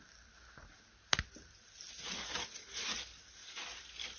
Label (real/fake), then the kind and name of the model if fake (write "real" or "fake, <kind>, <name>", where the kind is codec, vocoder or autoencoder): fake, vocoder, BigVGAN v2